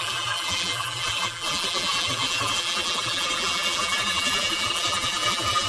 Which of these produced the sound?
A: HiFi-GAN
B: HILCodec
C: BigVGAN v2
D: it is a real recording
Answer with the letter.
C